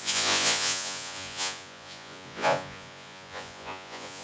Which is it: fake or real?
fake